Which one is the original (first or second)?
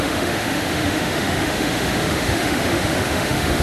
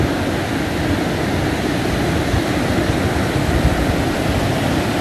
second